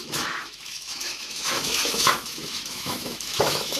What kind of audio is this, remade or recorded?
remade